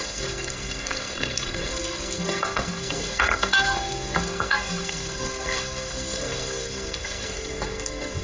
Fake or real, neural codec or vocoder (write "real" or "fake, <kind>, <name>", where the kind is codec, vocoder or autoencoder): fake, codec, SNAC